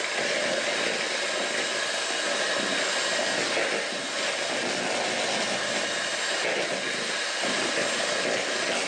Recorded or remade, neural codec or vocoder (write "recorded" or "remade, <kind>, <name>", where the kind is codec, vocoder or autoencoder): recorded